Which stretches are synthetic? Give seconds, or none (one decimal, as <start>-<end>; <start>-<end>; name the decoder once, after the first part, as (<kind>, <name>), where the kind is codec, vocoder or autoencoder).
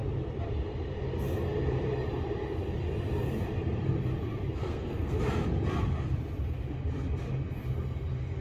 4.6-5.2 (codec, SNAC)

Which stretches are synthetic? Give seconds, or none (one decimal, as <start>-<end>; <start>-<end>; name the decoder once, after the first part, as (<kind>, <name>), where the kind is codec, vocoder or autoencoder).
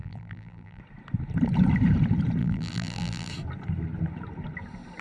0.0-0.8 (vocoder, BigVGAN v2); 2.4-3.3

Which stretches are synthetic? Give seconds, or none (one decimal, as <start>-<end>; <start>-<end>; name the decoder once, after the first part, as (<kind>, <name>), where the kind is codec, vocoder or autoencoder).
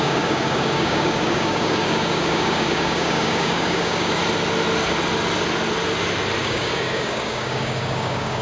0.0-4.2 (codec, DAC); 6.4-8.4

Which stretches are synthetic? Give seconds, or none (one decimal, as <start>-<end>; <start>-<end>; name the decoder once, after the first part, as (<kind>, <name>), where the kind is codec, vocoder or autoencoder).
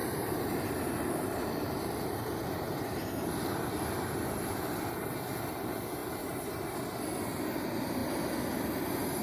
0.0-3.3 (vocoder, BigVGAN v2); 6.0-6.7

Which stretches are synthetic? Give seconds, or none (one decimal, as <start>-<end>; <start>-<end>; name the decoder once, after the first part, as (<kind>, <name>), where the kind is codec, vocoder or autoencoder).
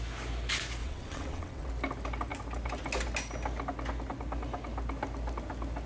0.8-1.7 (vocoder, WaveNeXt)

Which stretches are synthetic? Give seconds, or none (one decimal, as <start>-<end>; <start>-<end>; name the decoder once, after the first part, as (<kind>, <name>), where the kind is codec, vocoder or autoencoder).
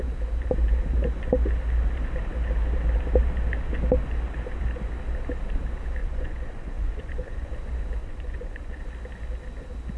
6.0-7.5 (vocoder, Vocos); 8.0-8.8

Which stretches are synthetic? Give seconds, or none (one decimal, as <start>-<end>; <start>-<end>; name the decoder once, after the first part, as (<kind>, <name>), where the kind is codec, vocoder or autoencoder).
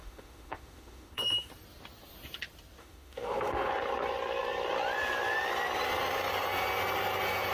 0.0-1.5 (autoencoder, DAC-VAE); 2.8-3.7